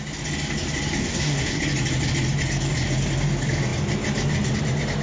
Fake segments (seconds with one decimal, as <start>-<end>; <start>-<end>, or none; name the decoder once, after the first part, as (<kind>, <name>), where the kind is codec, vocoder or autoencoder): 1.0-1.6 (codec, SNAC)